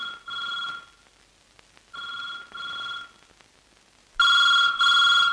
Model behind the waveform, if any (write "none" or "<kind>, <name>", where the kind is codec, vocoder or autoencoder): none